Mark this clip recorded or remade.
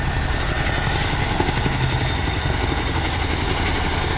recorded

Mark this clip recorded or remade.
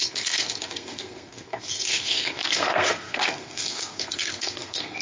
remade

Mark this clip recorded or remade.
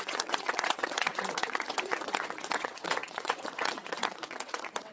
remade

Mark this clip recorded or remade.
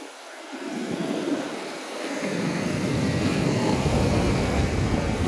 remade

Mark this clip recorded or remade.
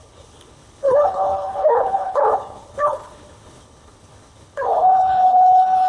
remade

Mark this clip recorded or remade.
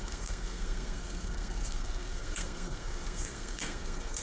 remade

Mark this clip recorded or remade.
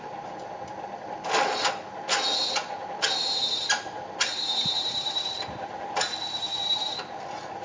recorded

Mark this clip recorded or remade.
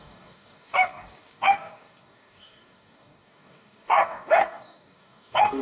remade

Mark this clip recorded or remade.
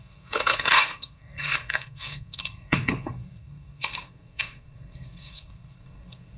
remade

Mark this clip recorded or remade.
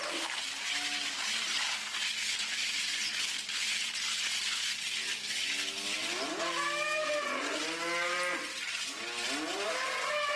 recorded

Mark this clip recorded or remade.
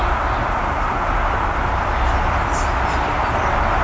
recorded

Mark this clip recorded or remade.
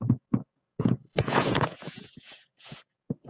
remade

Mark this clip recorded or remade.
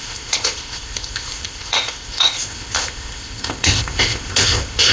remade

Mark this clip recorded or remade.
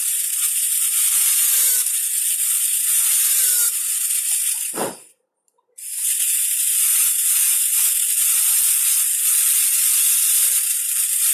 remade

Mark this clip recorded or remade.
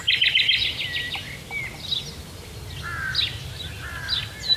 recorded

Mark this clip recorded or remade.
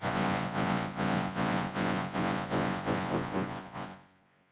remade